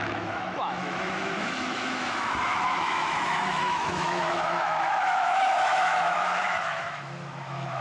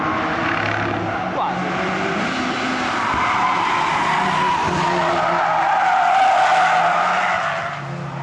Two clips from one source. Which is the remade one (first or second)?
first